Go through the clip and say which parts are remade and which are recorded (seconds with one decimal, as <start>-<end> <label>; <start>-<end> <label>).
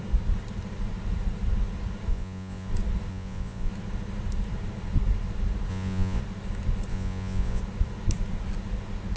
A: 0.0-2.1 recorded; 2.1-2.7 remade; 2.7-3.1 recorded; 3.1-3.7 remade; 3.7-5.7 recorded; 5.7-6.2 remade; 6.2-6.9 recorded; 6.9-7.6 remade; 7.6-9.2 recorded